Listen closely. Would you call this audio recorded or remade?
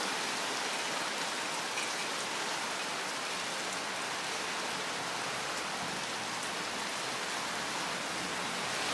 recorded